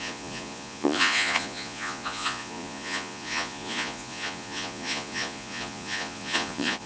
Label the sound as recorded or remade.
remade